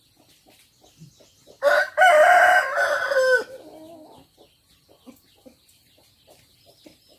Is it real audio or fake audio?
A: real